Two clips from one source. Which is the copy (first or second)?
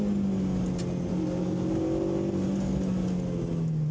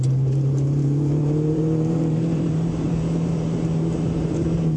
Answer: second